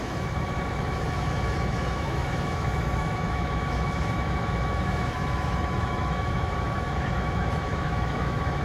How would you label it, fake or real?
fake